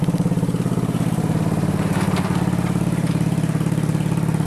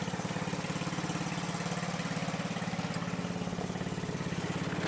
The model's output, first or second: first